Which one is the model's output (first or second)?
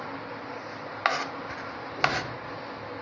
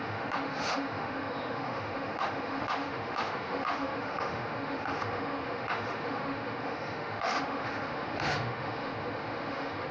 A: second